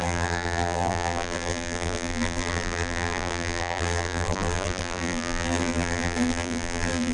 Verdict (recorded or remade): remade